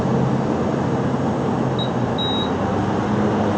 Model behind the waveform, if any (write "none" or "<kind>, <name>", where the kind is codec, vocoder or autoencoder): none